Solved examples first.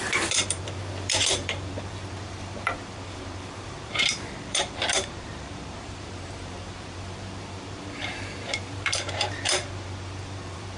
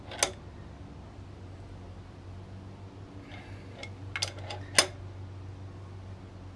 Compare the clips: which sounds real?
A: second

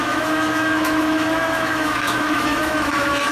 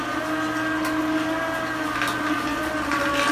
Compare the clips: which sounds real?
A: second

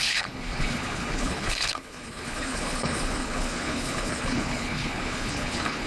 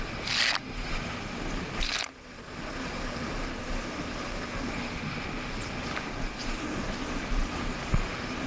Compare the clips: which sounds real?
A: second